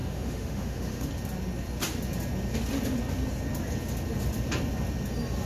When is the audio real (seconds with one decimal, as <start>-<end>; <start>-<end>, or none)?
1.1-5.5